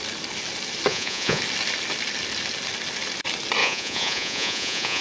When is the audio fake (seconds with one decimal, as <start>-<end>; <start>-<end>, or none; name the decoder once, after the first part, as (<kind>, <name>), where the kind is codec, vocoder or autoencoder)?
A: 0.9-1.4 (vocoder, Vocos); 3.6-5.0